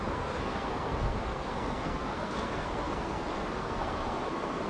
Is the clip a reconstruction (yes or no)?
yes